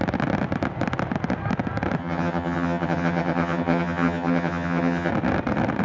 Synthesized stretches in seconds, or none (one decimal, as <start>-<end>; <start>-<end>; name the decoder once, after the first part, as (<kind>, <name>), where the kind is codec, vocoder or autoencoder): 2.0-5.1 (vocoder, HiFi-GAN)

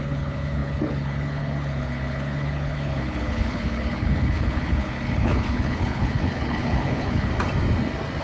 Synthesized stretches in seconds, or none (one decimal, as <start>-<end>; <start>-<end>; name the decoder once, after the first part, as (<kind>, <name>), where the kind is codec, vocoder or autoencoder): 0.0-7.3 (codec, HILCodec)

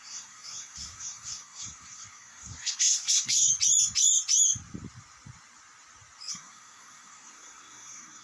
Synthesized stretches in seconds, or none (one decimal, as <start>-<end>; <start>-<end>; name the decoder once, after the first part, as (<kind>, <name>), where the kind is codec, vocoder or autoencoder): 0.0-3.5 (codec, SNAC); 6.3-8.2

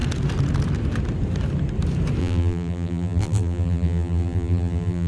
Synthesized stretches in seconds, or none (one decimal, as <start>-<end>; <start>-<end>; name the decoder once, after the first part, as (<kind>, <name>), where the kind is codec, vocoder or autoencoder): 2.2-5.1 (vocoder, BigVGAN v2)

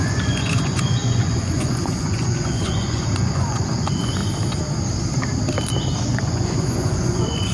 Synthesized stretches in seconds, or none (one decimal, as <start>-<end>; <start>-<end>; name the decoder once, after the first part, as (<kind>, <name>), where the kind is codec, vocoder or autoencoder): 0.0-4.2 (vocoder, Vocos); 6.0-7.5

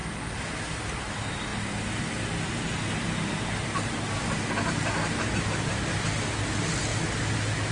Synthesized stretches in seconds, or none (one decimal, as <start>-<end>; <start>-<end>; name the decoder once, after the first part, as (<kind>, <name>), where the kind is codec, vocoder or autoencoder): none

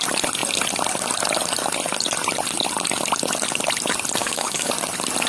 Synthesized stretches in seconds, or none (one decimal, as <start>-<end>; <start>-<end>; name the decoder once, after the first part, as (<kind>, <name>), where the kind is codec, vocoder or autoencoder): 4.2-4.7 (codec, DAC)